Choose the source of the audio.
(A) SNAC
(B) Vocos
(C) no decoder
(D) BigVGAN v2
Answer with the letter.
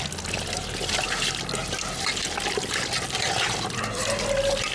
C